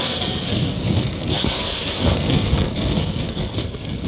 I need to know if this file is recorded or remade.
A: remade